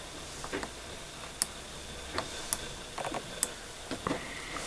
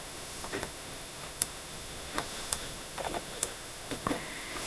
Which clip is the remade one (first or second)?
second